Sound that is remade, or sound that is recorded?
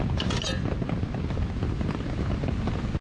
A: recorded